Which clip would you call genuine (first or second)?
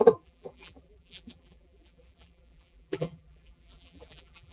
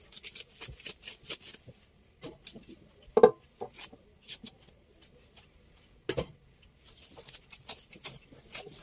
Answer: second